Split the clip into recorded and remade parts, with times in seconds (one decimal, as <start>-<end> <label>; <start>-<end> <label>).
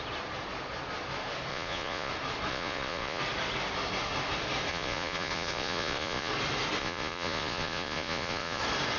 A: 0.0-1.5 recorded; 1.5-2.1 remade; 2.1-2.5 recorded; 2.5-3.2 remade; 3.2-4.7 recorded; 4.7-6.3 remade; 6.3-6.8 recorded; 6.8-8.6 remade; 8.6-9.0 recorded